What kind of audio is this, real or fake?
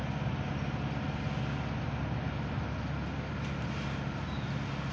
real